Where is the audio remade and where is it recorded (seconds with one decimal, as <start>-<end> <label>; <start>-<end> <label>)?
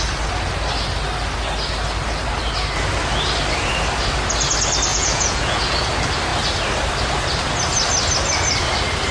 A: 0.0-4.9 recorded; 4.9-5.5 remade; 5.5-9.1 recorded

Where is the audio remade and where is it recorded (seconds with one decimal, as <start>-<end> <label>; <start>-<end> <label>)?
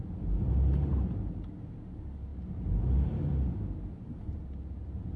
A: 0.0-5.2 recorded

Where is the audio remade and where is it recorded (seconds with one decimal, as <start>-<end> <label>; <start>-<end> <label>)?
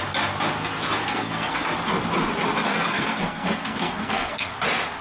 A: 0.0-1.0 recorded; 1.0-1.7 remade; 1.7-2.7 recorded; 2.7-4.5 remade; 4.5-5.0 recorded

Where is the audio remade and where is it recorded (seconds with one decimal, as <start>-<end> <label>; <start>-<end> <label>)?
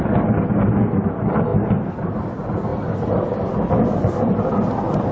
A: 0.0-5.1 recorded